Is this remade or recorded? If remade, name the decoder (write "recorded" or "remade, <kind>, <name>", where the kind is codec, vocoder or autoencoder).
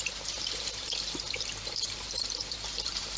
remade, vocoder, BigVGAN v2